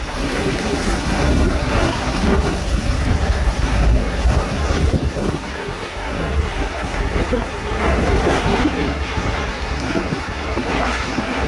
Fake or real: fake